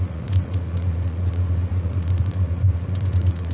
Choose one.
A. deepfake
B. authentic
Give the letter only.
A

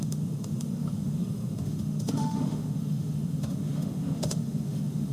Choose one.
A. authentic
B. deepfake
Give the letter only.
B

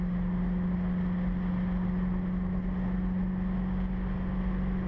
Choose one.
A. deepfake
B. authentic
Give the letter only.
B